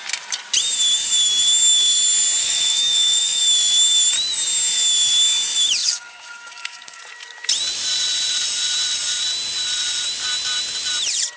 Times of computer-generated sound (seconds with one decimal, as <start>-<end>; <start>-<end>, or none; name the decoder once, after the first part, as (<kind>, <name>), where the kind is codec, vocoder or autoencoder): 2.4-3.4 (codec, DAC); 5.8-7.0